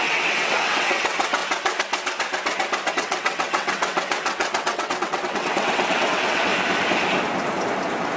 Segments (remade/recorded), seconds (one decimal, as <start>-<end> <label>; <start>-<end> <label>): 0.0-1.4 remade; 1.4-2.9 recorded; 2.9-6.5 remade; 6.5-8.2 recorded